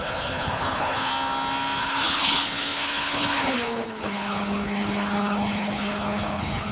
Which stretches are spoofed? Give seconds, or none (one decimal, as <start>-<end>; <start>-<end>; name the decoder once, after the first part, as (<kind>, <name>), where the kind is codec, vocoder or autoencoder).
0.0-1.1 (codec, HILCodec); 1.8-6.7